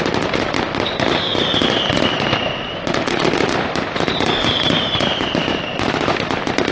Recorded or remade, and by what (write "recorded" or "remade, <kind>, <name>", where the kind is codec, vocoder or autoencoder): recorded